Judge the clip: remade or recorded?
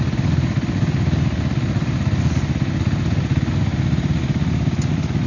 recorded